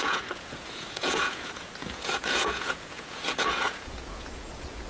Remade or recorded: remade